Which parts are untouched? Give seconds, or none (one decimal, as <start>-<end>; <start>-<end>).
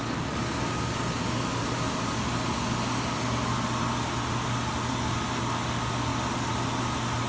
0.0-7.3